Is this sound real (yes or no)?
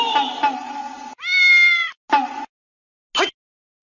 yes